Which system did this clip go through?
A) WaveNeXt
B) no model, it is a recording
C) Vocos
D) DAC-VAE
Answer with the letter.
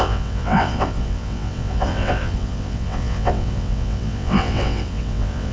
A